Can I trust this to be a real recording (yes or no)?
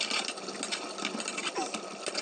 yes